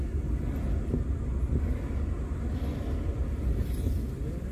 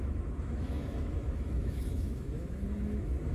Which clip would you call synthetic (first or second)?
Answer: second